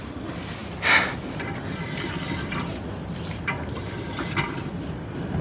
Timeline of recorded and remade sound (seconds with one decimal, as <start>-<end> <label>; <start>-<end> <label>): 0.0-5.4 recorded

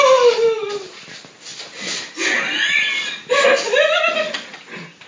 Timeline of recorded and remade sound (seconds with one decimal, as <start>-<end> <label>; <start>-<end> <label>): 0.0-5.1 recorded

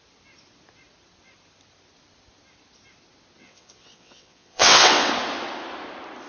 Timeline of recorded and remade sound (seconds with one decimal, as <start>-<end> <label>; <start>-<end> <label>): 0.0-3.4 recorded; 3.4-5.1 remade; 5.1-6.3 recorded

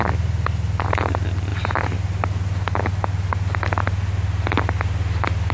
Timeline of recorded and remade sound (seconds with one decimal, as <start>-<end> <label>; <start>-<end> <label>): 0.0-5.5 recorded